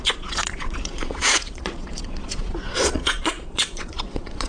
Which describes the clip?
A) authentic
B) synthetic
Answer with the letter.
B